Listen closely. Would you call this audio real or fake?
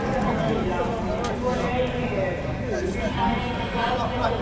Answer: real